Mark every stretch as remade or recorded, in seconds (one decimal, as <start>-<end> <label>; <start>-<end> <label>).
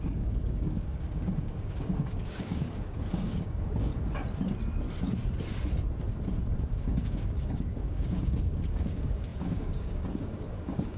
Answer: 0.0-3.9 remade; 3.9-6.6 recorded; 6.6-11.0 remade